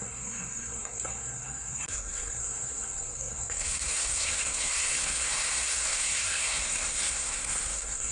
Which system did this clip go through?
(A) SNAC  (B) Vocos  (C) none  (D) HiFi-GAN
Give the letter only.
A